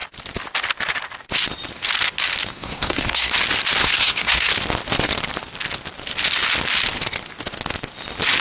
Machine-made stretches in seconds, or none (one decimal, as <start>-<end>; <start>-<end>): 2.5-3.3; 3.8-4.5